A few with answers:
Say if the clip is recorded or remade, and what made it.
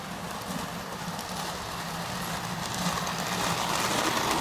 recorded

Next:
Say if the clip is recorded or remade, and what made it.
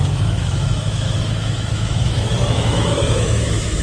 remade, autoencoder, DAC-VAE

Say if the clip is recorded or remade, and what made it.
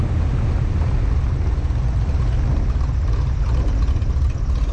recorded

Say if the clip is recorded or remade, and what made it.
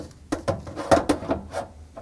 recorded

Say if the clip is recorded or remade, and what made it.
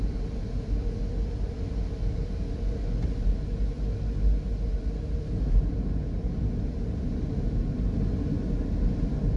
recorded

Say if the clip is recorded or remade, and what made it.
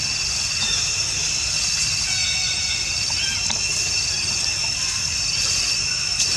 recorded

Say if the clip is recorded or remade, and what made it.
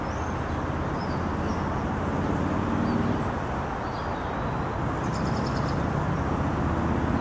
recorded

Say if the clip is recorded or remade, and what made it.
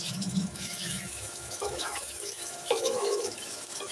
remade, autoencoder, DAC-VAE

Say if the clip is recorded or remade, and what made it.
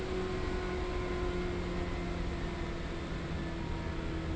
recorded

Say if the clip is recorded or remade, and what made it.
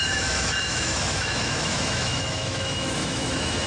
remade, autoencoder, DAC-VAE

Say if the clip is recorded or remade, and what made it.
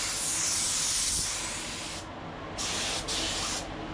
recorded